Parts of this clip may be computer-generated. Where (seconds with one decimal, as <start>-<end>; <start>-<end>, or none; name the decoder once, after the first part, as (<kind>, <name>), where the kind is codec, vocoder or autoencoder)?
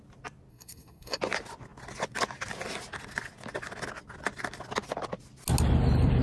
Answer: 0.5-1.2 (codec, SNAC)